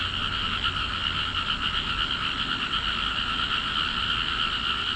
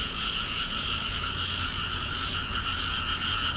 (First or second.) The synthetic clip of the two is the second